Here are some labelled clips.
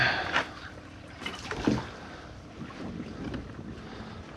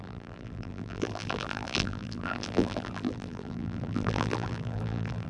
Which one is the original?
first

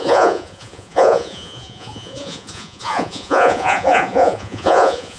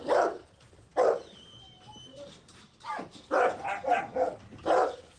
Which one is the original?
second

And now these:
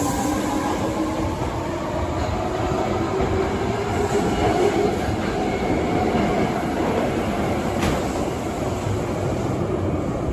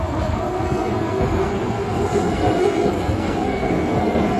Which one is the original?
first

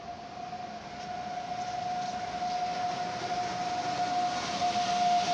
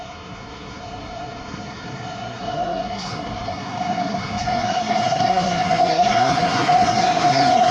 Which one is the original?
first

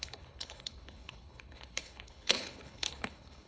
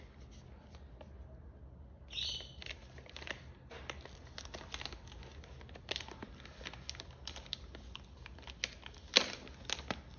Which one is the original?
second